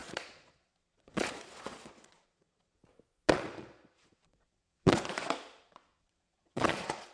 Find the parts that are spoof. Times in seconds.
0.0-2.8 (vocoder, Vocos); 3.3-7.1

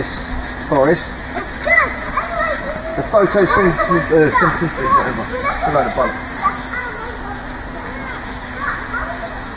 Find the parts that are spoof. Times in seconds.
5.3-6.1 (autoencoder, DAC-VAE)